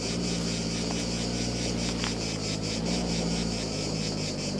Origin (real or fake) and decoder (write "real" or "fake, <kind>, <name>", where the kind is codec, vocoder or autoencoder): real